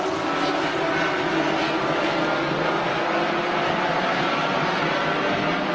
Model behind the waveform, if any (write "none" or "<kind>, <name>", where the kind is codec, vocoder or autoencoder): none